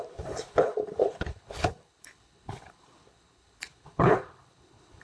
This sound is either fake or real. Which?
fake